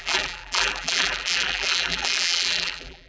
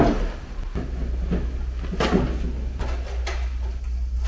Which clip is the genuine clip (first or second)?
second